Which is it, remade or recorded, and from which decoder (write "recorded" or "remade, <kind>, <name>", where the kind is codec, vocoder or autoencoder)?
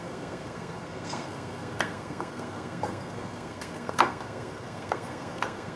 remade, codec, SNAC